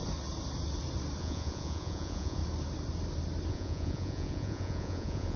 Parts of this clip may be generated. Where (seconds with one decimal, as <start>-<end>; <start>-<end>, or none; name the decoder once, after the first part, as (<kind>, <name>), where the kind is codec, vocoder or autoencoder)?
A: 1.2-2.4 (vocoder, Vocos); 3.5-5.4